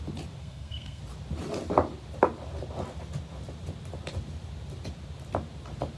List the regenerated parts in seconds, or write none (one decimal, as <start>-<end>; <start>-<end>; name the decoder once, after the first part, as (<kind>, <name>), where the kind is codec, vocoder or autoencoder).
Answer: 0.4-1.0 (codec, SNAC)